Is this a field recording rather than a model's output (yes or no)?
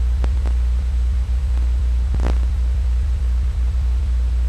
no